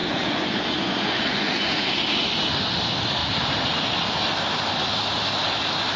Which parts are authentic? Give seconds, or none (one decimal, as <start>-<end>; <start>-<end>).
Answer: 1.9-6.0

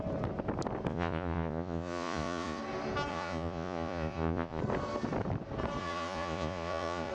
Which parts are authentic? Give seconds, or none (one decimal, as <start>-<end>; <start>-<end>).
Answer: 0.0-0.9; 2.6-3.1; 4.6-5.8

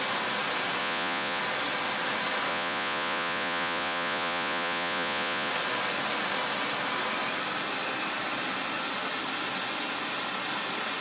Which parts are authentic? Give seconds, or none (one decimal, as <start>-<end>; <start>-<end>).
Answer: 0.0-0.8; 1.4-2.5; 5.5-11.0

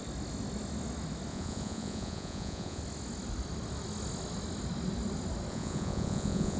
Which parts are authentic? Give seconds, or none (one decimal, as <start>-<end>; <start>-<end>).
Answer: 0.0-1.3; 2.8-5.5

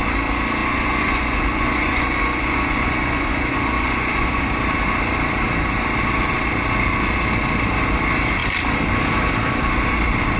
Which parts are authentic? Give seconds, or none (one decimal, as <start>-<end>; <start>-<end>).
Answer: 0.0-0.6; 4.5-10.4

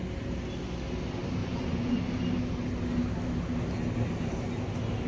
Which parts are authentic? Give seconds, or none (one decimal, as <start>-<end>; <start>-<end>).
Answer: 0.0-1.4; 2.0-5.1